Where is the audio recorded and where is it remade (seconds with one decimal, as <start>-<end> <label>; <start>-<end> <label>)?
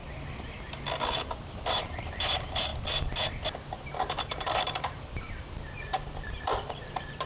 0.0-1.8 recorded; 1.8-2.7 remade; 2.7-4.1 recorded; 4.1-7.3 remade